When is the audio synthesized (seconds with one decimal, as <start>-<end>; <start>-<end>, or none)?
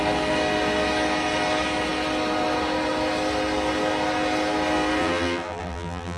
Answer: 5.0-6.2